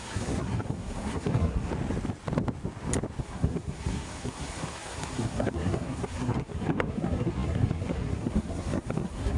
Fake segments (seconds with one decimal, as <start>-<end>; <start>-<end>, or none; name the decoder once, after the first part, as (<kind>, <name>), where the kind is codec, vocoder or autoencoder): 0.0-1.7 (codec, SNAC); 3.2-9.4